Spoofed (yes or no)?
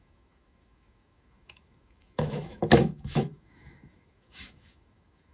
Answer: yes